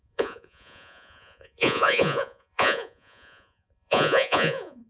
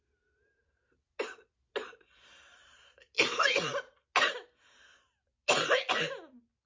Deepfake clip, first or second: first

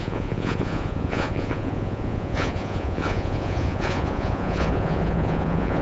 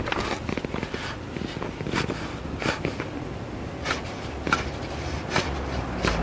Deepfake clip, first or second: first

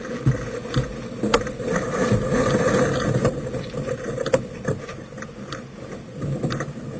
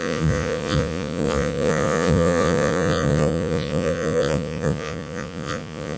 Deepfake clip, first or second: second